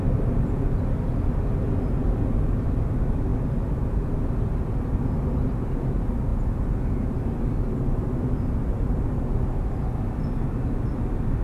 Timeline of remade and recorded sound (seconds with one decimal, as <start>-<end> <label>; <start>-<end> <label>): 0.0-11.4 recorded